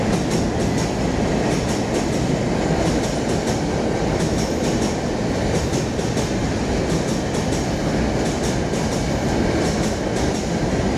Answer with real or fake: real